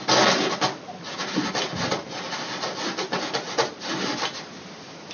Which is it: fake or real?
real